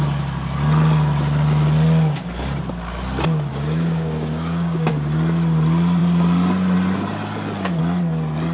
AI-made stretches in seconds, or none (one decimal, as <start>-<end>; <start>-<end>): 3.5-4.9